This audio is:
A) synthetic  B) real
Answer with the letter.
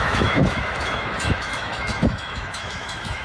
A